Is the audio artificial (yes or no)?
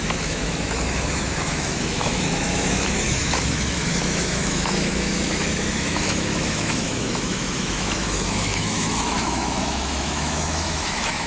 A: yes